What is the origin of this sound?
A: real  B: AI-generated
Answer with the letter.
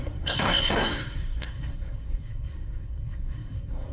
B